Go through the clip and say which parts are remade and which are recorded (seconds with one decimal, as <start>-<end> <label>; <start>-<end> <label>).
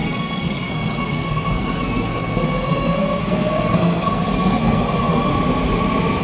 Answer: 0.0-5.3 remade; 5.3-6.2 recorded